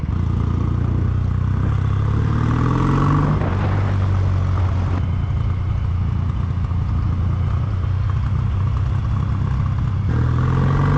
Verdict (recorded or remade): recorded